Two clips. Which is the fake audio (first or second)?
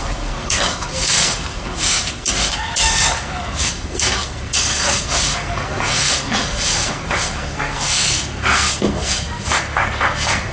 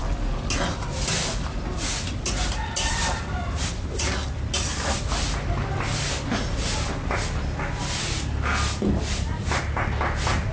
first